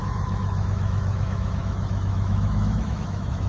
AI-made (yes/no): yes